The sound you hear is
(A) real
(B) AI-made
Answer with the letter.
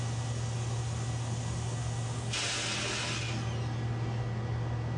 A